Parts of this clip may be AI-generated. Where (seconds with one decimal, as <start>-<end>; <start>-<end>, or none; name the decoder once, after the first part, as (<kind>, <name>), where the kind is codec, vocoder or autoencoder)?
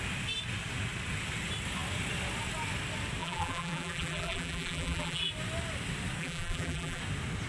3.2-5.3 (vocoder, BigVGAN v2); 6.2-7.0